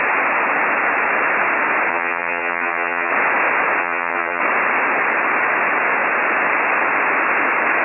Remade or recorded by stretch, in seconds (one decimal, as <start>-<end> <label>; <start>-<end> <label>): 0.0-1.9 recorded; 1.9-3.1 remade; 3.1-3.8 recorded; 3.8-4.4 remade; 4.4-7.8 recorded